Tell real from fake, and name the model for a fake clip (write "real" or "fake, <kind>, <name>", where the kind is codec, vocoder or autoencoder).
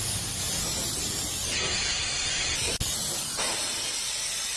real